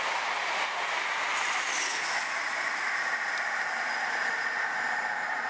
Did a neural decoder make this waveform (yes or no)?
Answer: no